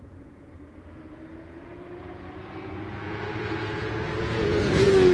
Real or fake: fake